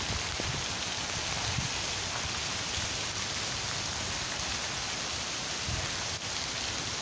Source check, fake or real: real